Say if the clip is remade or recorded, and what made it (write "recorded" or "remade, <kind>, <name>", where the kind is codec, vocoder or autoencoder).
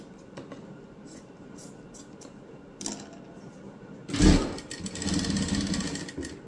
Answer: recorded